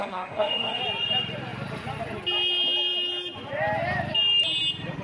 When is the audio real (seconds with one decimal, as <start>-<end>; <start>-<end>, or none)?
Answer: 0.8-5.0